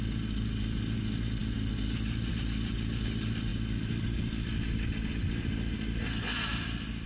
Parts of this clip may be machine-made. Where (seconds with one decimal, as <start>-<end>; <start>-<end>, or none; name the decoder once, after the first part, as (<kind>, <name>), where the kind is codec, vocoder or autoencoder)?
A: none